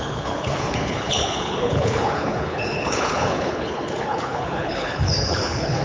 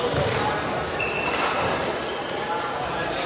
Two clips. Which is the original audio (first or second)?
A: second